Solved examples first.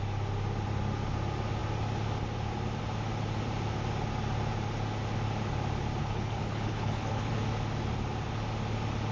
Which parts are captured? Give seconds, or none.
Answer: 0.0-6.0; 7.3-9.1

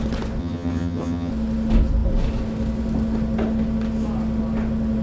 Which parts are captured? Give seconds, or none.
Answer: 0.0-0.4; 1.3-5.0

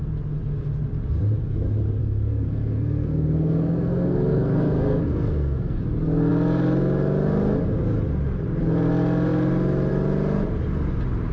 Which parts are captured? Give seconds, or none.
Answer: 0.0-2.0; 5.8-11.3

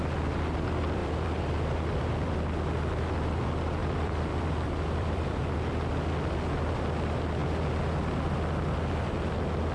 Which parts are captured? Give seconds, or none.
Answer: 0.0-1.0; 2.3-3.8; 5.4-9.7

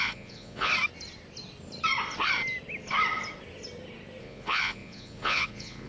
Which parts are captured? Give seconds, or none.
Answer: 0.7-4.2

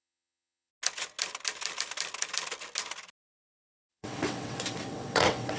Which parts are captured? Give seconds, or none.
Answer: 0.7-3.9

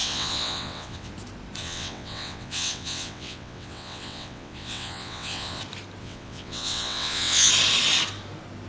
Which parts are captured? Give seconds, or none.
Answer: 1.1-1.6; 5.6-6.0; 7.5-8.7

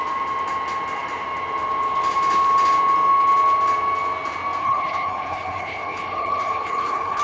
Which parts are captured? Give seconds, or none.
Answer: 0.0-4.6